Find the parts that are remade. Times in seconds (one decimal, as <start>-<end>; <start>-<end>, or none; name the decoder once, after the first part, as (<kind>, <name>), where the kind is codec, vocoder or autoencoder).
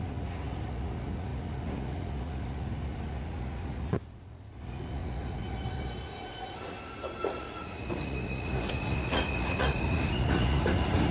0.0-11.1 (vocoder, Vocos)